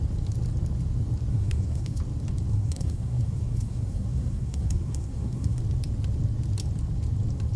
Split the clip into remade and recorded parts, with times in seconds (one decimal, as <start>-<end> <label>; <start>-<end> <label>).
0.0-1.3 recorded; 1.3-2.0 remade; 2.0-2.5 recorded; 2.5-5.6 remade; 5.6-7.6 recorded